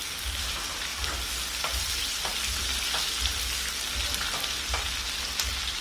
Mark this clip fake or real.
real